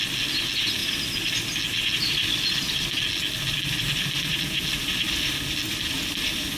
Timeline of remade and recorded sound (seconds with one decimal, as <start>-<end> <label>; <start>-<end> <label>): 0.0-6.6 recorded